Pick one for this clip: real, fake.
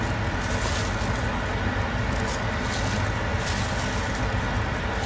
real